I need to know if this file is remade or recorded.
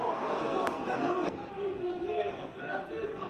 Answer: remade